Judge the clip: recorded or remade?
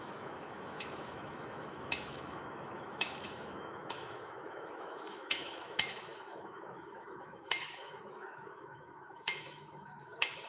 remade